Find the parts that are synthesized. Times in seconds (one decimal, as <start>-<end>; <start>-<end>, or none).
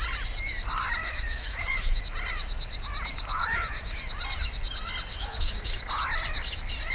1.0-2.0; 3.4-4.0; 5.1-5.8